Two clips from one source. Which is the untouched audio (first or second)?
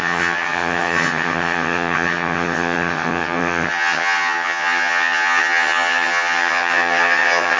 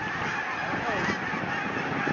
second